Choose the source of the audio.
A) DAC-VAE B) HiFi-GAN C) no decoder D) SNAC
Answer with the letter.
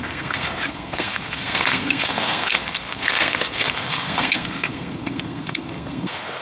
D